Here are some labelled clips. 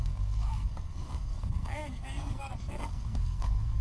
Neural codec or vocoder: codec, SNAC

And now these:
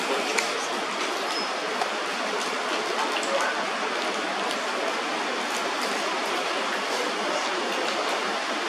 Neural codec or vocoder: none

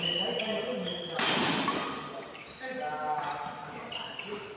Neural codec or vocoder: none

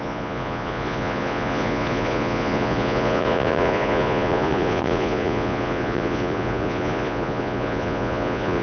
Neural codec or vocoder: vocoder, Vocos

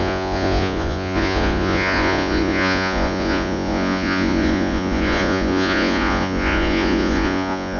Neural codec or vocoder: vocoder, Vocos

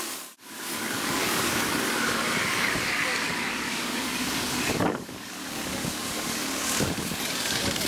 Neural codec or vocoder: codec, DAC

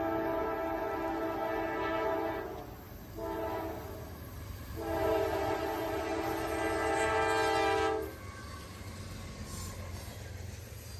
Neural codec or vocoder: none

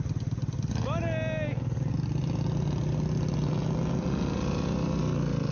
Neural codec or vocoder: none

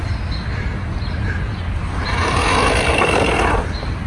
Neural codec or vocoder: none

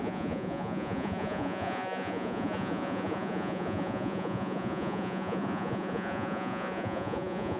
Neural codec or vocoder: vocoder, Vocos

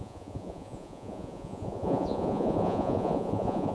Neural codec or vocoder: vocoder, Vocos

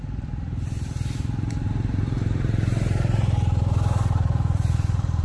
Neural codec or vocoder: vocoder, BigVGAN v2